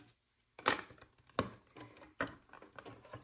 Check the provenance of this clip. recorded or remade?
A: recorded